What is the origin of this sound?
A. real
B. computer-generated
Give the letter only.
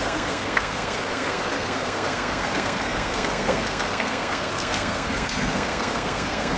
B